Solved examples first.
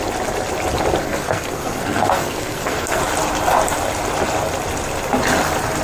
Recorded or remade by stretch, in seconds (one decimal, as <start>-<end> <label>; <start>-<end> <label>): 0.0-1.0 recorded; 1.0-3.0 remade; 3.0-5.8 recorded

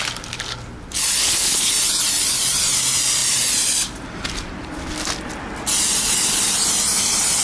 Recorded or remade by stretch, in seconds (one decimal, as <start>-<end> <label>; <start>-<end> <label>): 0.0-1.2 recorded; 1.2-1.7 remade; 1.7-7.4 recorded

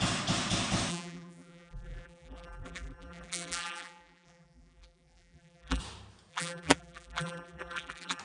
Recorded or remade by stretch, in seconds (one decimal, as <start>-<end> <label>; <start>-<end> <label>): 0.0-0.9 recorded; 0.9-5.8 remade; 5.8-6.3 recorded; 6.3-8.2 remade

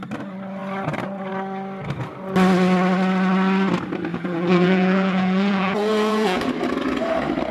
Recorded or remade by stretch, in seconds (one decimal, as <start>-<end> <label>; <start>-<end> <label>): 0.0-4.1 recorded; 4.1-6.4 remade; 6.4-7.5 recorded

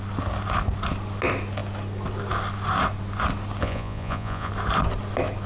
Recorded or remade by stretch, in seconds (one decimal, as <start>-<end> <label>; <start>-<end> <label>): 0.0-3.6 recorded; 3.6-4.5 remade; 4.5-5.5 recorded

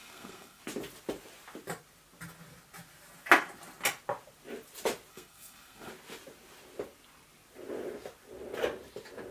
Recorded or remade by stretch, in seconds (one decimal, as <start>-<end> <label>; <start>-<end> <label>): 0.0-0.6 remade; 0.6-5.1 recorded; 5.1-5.9 remade; 5.9-9.3 recorded

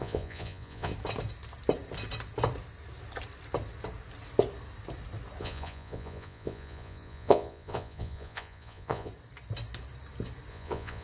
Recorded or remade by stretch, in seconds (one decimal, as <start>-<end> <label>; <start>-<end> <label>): 0.0-0.9 remade; 0.9-5.4 recorded; 5.4-9.1 remade; 9.1-10.5 recorded; 10.5-11.0 remade